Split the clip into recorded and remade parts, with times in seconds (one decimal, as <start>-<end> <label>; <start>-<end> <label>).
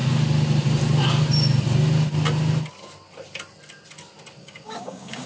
0.0-4.4 recorded; 4.4-5.3 remade